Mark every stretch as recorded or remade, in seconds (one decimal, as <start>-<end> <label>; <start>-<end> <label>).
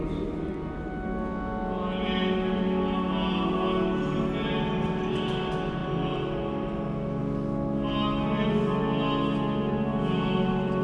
0.0-10.8 recorded